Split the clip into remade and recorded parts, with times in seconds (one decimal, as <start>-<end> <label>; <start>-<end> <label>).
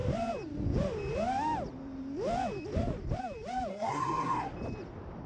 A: 0.0-3.7 recorded; 3.7-4.5 remade; 4.5-5.3 recorded